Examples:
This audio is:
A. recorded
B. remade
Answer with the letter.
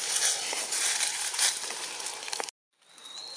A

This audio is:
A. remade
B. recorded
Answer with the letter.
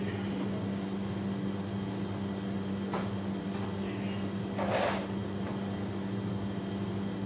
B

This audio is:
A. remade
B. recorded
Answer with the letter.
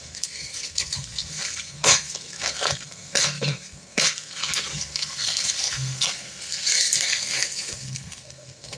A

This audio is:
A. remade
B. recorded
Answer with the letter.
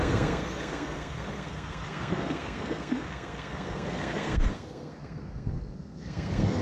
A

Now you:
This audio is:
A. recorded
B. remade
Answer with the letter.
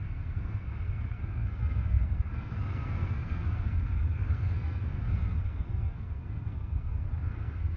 B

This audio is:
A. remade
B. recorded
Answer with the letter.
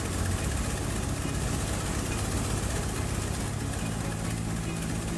B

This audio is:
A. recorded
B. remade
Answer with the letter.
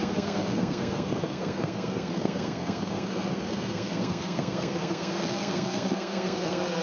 B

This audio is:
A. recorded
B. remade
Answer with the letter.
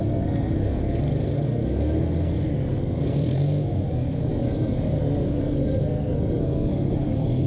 B